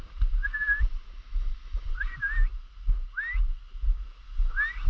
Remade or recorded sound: recorded